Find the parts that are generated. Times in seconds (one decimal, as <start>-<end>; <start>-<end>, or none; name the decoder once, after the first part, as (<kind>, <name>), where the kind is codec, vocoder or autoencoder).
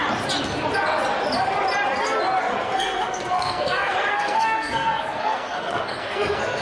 2.5-6.6 (codec, SNAC)